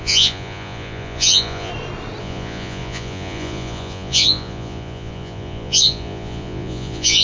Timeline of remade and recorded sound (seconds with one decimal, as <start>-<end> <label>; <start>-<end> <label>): 0.0-1.7 remade; 1.7-2.2 recorded; 2.2-7.2 remade

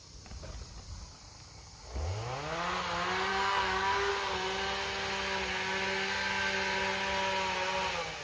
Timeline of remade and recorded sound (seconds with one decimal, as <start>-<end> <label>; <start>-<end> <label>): 0.0-3.3 recorded; 3.3-4.1 remade; 4.1-8.2 recorded

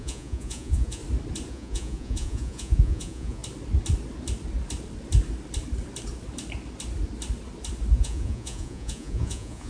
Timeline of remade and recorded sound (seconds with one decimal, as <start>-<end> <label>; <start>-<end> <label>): 0.0-1.0 remade; 1.0-1.5 recorded; 1.5-3.4 remade; 3.4-7.9 recorded; 7.9-9.7 remade